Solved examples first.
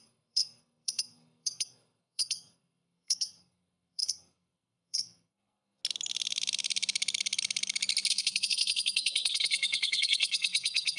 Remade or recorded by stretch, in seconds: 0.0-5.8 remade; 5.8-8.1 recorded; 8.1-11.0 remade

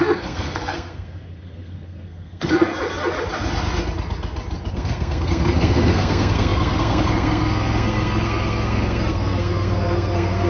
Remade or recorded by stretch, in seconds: 0.0-2.7 remade; 2.7-4.7 recorded; 4.7-10.5 remade

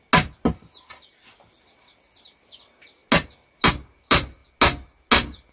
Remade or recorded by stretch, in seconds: 0.0-5.5 recorded

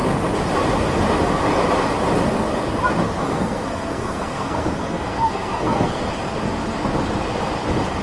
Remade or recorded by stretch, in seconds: 0.0-3.2 recorded; 3.2-6.1 remade; 6.1-8.0 recorded